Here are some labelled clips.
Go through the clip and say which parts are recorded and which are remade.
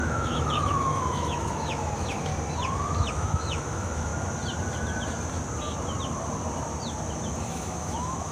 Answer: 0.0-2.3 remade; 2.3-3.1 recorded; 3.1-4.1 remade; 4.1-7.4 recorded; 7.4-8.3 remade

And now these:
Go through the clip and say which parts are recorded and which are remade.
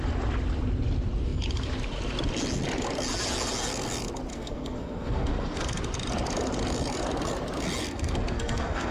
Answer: 0.0-4.3 recorded; 4.3-5.8 remade; 5.8-7.8 recorded; 7.8-8.9 remade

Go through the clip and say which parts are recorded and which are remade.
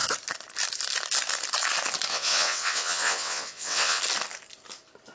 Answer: 0.0-2.1 recorded; 2.1-4.0 remade; 4.0-5.1 recorded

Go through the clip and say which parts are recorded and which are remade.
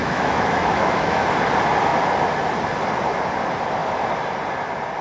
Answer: 0.0-1.2 remade; 1.2-5.0 recorded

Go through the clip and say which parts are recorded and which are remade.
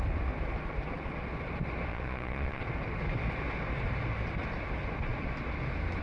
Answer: 0.0-1.9 recorded; 1.9-2.6 remade; 2.6-6.0 recorded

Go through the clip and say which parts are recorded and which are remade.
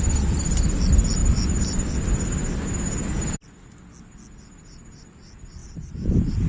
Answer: 0.0-5.6 recorded; 5.6-6.5 remade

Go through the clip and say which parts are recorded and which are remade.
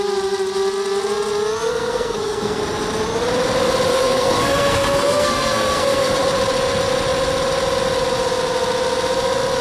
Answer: 0.0-1.7 recorded; 1.7-2.6 remade; 2.6-3.9 recorded; 3.9-6.1 remade; 6.1-9.6 recorded